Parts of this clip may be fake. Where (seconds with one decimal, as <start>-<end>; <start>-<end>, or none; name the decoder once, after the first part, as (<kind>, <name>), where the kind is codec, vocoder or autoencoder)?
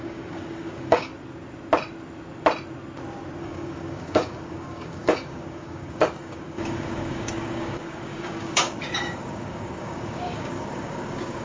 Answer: 0.0-1.1 (codec, DAC); 3.4-11.4